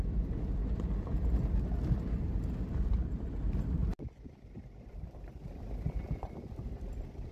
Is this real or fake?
fake